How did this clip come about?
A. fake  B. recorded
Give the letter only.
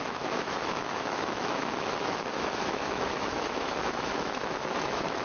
A